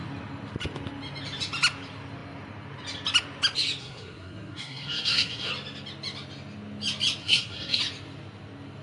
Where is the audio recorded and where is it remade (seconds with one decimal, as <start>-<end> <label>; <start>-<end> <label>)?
0.0-3.8 recorded; 3.8-5.5 remade; 5.5-7.2 recorded; 7.2-7.8 remade; 7.8-8.8 recorded

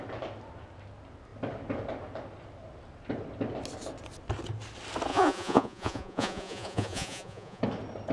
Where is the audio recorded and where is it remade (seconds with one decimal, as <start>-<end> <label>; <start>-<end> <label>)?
0.0-5.1 recorded; 5.1-7.6 remade; 7.6-8.1 recorded

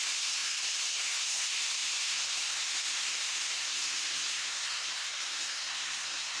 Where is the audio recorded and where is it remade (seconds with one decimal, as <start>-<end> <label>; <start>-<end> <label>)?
0.0-6.4 remade

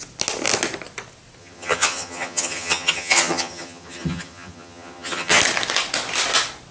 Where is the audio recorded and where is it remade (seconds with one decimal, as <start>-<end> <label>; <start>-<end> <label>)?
0.0-1.4 recorded; 1.4-5.4 remade; 5.4-6.7 recorded

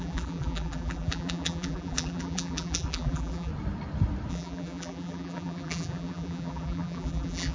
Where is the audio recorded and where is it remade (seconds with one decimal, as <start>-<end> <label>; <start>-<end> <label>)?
0.0-3.5 remade; 3.5-4.3 recorded; 4.3-7.5 remade

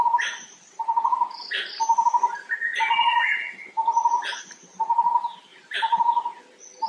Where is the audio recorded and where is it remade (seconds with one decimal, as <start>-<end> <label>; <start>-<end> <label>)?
0.0-1.5 remade; 1.5-6.9 recorded

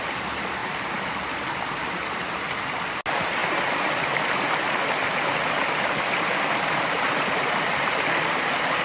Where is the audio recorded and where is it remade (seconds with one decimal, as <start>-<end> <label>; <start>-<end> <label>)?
0.0-8.8 recorded